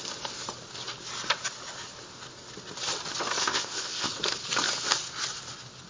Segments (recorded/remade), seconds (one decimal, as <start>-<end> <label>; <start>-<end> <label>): 0.0-3.4 recorded; 3.4-4.1 remade; 4.1-5.9 recorded